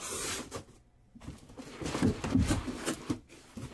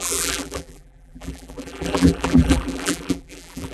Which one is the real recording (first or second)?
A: first